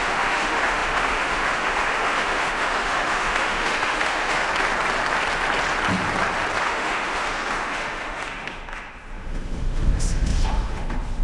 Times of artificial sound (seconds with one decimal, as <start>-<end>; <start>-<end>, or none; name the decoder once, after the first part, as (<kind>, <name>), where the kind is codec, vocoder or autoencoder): 0.0-4.5 (autoencoder, DAC-VAE); 6.6-11.2